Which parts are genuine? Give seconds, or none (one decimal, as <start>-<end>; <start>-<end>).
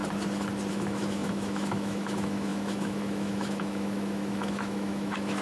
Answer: 0.0-0.7